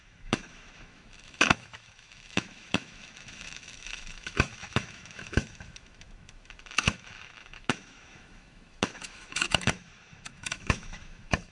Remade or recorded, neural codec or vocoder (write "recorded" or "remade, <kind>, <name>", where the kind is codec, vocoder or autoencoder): remade, autoencoder, DAC-VAE